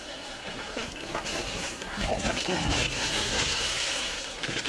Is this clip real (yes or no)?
no